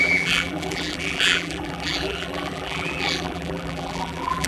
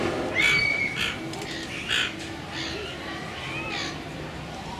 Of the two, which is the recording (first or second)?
second